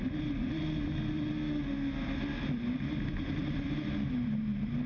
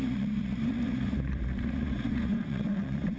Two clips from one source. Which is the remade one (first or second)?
second